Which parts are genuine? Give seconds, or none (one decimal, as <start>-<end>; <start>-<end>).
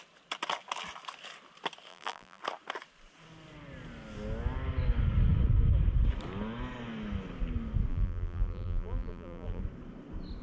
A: 0.0-1.9; 2.4-7.9; 9.6-10.4